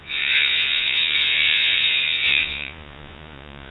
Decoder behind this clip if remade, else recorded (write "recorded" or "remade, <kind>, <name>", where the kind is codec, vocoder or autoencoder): remade, vocoder, Vocos